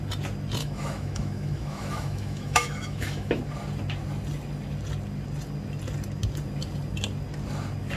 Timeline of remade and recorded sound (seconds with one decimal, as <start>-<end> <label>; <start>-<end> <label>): 0.0-0.6 recorded; 0.6-3.4 remade; 3.4-8.0 recorded

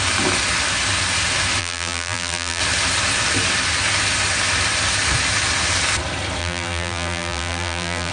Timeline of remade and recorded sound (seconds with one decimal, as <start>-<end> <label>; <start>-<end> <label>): 0.0-1.6 recorded; 1.6-2.6 remade; 2.6-6.4 recorded; 6.4-8.1 remade

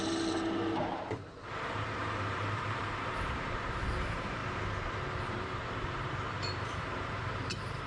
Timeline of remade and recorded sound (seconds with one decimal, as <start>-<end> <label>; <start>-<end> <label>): 0.0-4.4 remade; 4.4-5.3 recorded; 5.3-7.9 remade